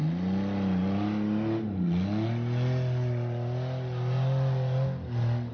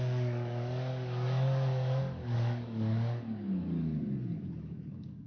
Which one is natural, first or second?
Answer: first